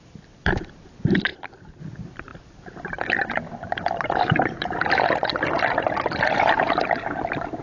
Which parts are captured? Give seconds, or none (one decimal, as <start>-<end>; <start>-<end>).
1.3-1.8; 2.3-3.5; 5.3-7.6